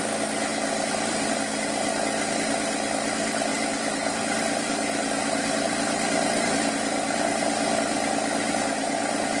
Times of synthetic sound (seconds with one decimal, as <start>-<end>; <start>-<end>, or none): 0.5-1.3; 3.5-6.7